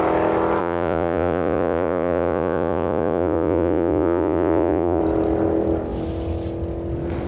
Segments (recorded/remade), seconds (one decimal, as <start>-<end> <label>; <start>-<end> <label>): 0.0-0.6 recorded; 0.6-5.0 remade; 5.0-7.3 recorded